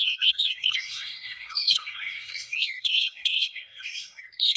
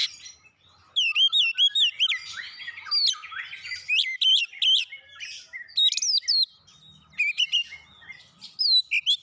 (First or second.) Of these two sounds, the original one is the second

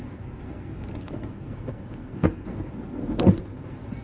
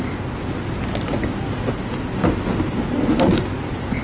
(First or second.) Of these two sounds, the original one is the second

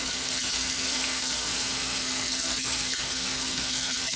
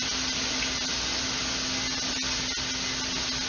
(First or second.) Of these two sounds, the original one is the second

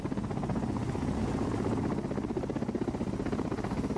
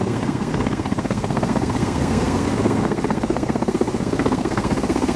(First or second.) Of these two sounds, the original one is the first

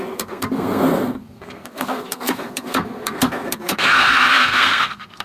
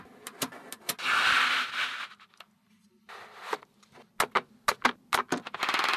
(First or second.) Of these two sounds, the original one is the second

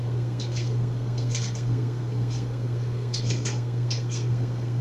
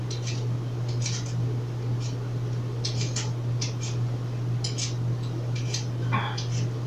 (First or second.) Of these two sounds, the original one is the second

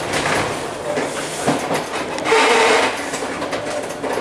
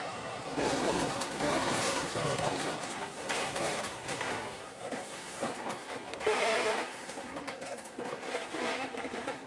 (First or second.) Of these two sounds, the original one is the first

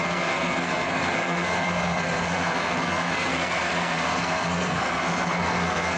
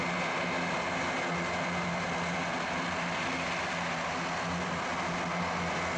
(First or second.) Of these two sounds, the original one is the second